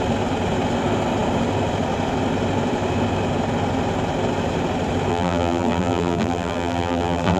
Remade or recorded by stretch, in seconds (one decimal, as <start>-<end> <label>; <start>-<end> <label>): 0.0-5.1 recorded; 5.1-7.4 remade